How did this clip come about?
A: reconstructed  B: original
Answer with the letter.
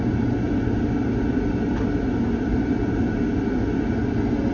B